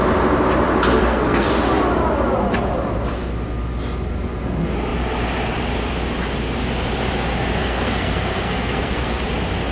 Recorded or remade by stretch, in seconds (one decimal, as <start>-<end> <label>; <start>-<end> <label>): 0.0-1.0 recorded; 1.0-1.5 remade; 1.5-7.6 recorded; 7.6-9.2 remade; 9.2-9.7 recorded